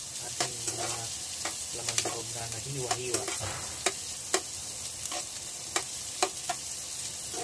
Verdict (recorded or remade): recorded